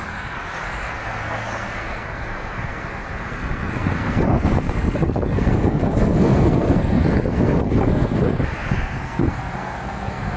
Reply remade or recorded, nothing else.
remade